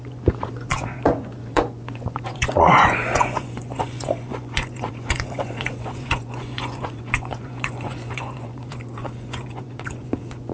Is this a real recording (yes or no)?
no